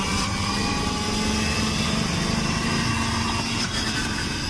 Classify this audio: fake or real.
real